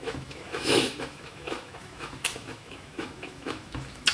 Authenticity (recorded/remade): remade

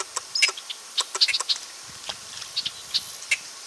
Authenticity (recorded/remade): recorded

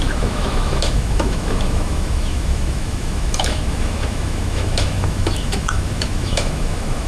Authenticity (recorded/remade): remade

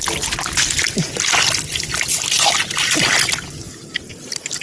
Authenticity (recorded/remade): recorded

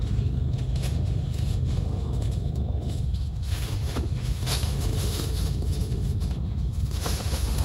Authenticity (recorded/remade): remade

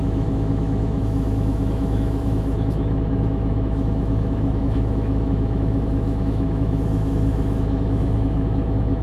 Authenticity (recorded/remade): remade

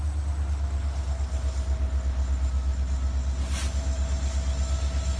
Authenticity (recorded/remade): recorded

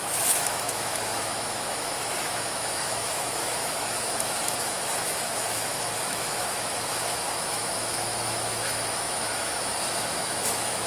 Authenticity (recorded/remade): remade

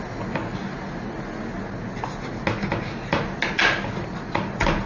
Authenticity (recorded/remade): recorded